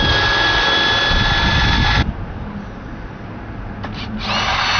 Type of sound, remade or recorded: recorded